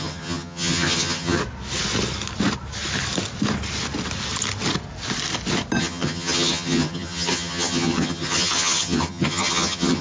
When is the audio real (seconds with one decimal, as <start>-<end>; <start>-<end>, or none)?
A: 1.4-5.8